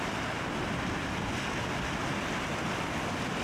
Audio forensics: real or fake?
real